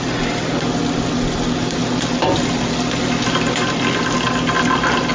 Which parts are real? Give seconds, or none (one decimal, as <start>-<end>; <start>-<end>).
0.0-5.1